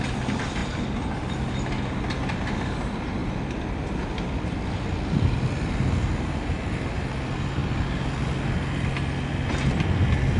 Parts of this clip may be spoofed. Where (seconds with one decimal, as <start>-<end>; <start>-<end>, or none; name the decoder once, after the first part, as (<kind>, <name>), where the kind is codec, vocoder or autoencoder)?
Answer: none